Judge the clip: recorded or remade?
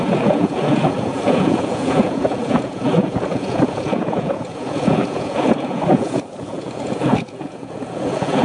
remade